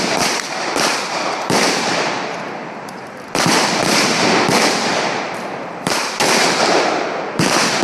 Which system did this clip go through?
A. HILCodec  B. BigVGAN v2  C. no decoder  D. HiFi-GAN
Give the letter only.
B